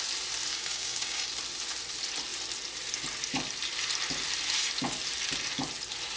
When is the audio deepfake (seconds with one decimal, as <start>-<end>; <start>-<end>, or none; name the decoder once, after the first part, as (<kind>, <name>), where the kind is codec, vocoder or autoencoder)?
0.5-1.3 (codec, DAC)